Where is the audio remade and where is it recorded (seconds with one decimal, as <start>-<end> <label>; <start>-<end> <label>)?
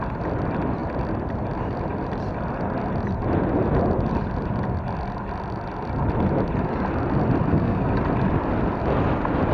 0.0-7.5 recorded; 7.5-8.0 remade; 8.0-9.5 recorded